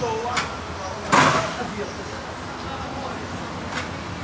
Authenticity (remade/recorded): recorded